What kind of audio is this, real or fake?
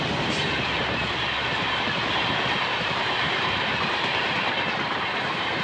fake